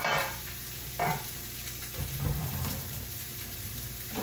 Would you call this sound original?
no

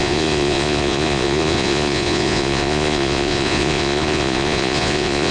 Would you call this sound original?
no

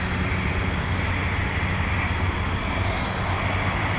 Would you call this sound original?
yes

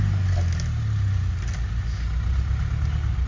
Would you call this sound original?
yes